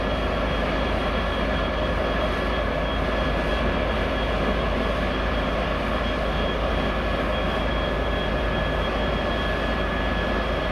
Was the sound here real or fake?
real